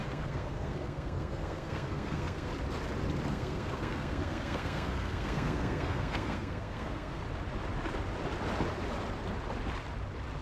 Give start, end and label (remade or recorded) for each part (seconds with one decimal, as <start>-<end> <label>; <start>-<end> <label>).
0.0-2.5 remade; 2.5-3.3 recorded; 3.3-7.2 remade; 7.2-10.4 recorded